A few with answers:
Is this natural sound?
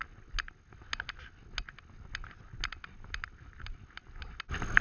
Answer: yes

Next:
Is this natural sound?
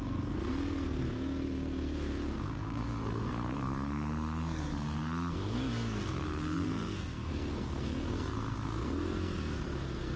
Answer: no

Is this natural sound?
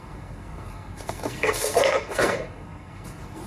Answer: no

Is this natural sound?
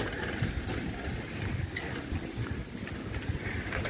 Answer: yes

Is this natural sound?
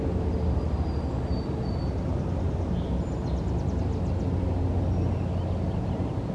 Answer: yes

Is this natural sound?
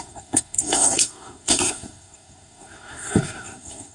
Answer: no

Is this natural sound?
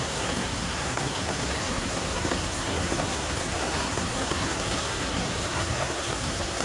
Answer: no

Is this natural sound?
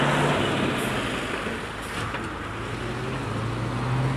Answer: yes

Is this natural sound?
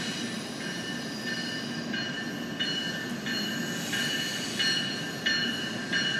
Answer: yes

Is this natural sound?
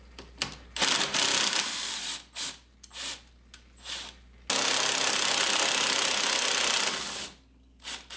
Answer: yes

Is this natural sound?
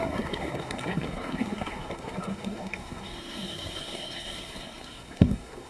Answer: no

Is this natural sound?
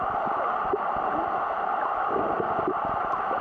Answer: yes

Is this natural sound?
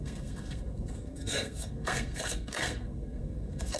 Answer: no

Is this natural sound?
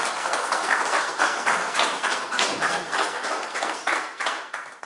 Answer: no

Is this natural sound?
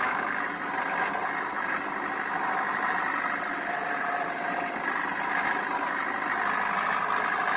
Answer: yes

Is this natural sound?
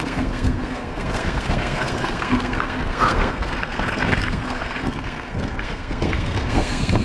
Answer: no